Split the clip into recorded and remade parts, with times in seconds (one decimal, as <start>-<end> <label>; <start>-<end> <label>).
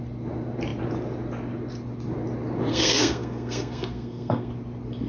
0.0-2.7 recorded; 2.7-4.5 remade; 4.5-5.1 recorded